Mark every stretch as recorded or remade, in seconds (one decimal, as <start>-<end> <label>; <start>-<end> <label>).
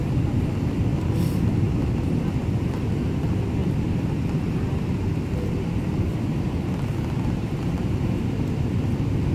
0.0-0.9 recorded; 0.9-2.7 remade; 2.7-3.6 recorded; 3.6-8.2 remade; 8.2-9.3 recorded